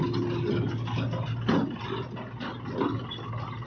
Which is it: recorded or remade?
recorded